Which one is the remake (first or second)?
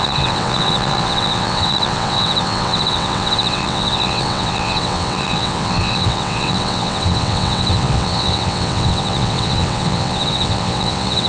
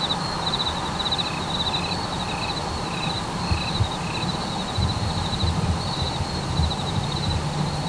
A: first